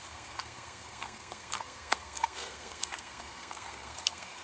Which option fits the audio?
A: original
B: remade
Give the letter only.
B